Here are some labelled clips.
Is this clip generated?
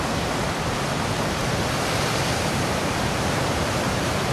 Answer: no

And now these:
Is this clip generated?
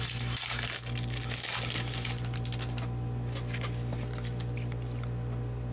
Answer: no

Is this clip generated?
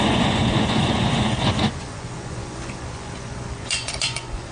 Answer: yes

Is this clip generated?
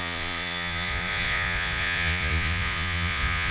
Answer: yes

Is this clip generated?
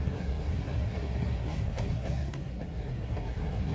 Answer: yes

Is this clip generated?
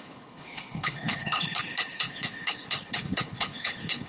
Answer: yes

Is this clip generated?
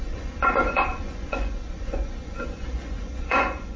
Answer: yes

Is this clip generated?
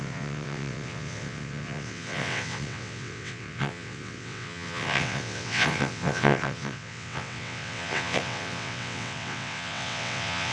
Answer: yes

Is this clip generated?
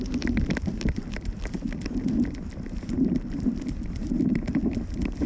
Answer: no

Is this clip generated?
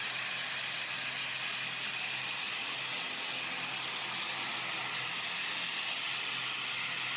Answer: no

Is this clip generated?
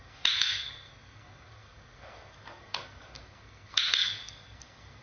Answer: yes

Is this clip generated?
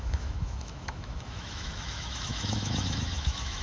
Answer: yes